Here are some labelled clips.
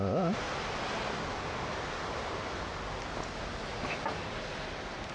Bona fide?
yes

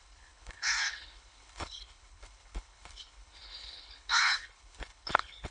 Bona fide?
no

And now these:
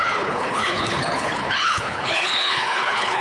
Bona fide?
no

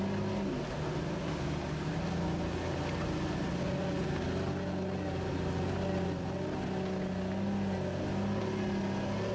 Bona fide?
yes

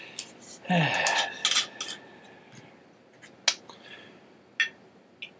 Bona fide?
yes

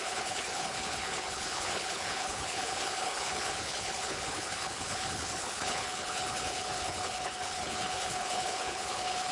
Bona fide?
no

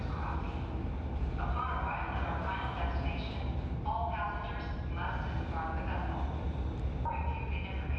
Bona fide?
yes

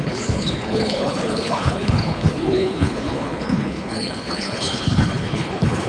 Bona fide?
no